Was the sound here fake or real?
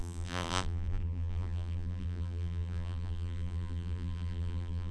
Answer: fake